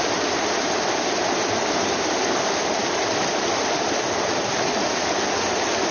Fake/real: real